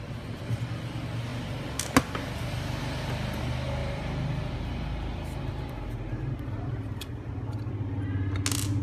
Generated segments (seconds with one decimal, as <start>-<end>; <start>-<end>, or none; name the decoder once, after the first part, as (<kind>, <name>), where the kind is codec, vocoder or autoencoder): 3.8-7.7 (vocoder, BigVGAN v2)